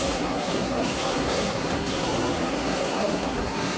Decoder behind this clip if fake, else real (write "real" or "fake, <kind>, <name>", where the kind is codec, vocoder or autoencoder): fake, codec, SNAC